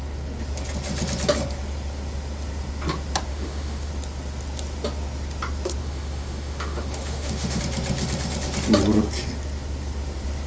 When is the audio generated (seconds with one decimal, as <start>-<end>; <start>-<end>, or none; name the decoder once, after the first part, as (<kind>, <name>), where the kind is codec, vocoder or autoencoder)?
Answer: 3.3-3.9 (autoencoder, DAC-VAE); 5.8-7.6